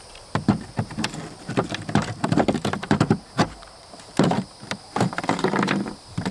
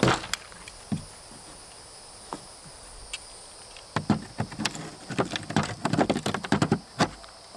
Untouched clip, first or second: second